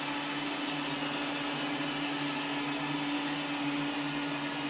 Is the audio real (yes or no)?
yes